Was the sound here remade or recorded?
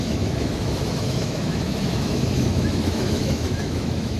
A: remade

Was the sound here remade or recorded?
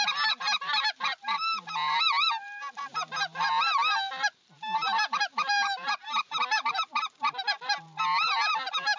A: remade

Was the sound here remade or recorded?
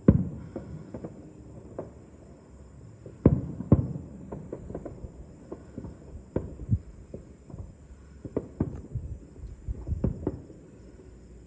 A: recorded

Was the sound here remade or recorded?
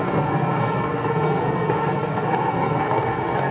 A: remade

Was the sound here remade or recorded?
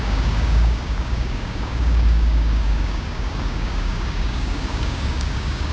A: remade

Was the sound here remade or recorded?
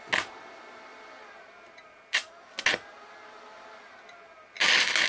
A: recorded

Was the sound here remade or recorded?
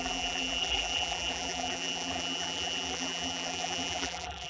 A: remade